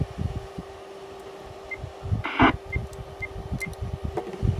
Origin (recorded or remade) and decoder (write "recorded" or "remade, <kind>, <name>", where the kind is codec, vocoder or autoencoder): recorded